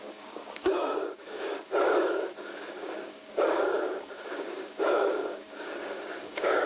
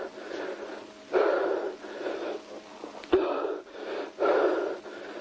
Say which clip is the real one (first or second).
second